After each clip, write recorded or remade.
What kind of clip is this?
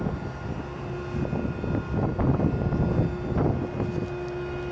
recorded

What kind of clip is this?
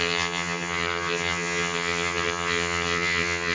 remade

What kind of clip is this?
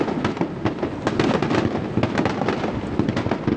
recorded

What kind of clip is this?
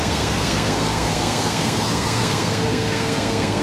remade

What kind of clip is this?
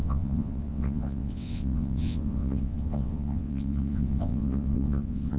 remade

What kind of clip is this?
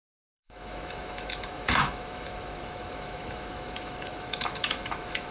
remade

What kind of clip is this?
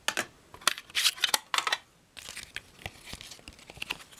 recorded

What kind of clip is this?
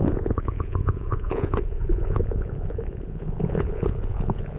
remade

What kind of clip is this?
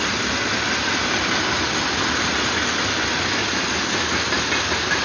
recorded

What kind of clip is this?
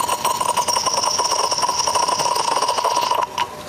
recorded